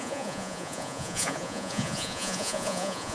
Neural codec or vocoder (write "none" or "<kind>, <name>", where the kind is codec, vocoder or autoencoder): vocoder, Vocos